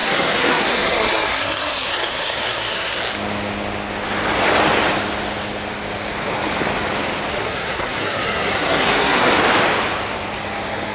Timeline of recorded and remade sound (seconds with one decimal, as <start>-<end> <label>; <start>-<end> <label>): 0.0-3.0 remade; 3.0-7.3 recorded; 7.3-9.3 remade; 9.3-10.9 recorded